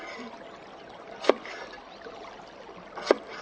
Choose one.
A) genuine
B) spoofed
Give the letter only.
A